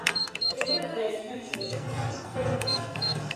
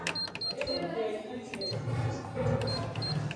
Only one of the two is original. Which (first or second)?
second